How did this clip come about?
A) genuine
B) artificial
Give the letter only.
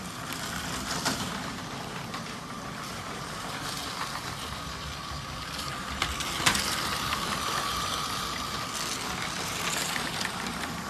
B